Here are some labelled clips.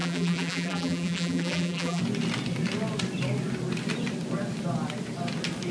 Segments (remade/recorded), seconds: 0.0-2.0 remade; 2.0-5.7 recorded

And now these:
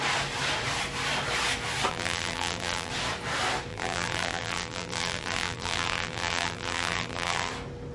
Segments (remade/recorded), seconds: 0.0-1.9 recorded; 1.9-2.9 remade; 2.9-3.7 recorded; 3.7-7.5 remade; 7.5-7.9 recorded